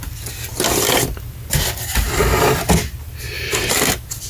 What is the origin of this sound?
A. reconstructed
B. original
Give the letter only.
B